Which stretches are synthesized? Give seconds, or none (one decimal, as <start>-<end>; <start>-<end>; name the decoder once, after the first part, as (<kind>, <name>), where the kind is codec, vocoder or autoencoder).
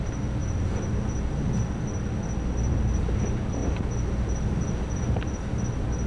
0.0-0.4 (vocoder, BigVGAN v2); 2.7-3.6; 4.9-6.1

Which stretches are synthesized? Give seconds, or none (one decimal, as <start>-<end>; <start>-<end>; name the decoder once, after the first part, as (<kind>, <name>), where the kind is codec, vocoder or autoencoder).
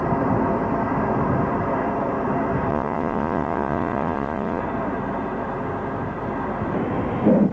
2.7-4.6 (vocoder, Vocos)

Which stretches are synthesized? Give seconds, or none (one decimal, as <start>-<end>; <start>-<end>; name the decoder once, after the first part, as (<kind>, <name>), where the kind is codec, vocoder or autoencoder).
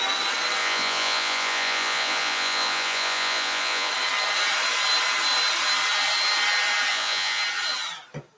0.6-3.9 (vocoder, Vocos); 6.9-7.4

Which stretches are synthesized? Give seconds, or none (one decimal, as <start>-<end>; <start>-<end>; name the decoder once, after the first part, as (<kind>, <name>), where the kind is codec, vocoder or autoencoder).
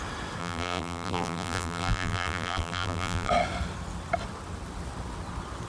0.4-3.3 (vocoder, BigVGAN v2)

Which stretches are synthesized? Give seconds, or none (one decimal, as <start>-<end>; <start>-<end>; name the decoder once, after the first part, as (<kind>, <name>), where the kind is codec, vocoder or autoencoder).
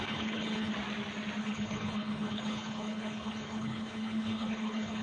0.0-0.7 (codec, HILCodec); 1.4-5.0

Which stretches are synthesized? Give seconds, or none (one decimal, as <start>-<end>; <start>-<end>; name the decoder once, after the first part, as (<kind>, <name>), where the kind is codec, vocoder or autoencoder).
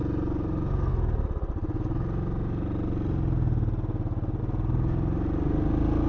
none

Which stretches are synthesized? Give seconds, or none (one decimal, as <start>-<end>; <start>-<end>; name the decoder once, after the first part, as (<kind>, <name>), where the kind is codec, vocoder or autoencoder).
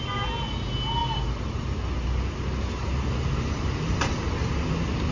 none